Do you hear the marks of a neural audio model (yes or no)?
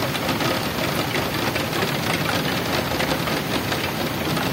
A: no